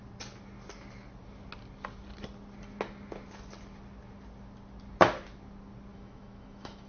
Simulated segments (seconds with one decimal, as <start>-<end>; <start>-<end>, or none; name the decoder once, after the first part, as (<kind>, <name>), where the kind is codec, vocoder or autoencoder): 5.9-6.9 (autoencoder, DAC-VAE)